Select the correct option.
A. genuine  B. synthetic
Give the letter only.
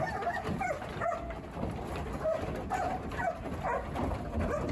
A